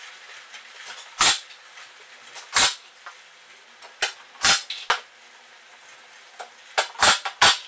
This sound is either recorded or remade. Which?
recorded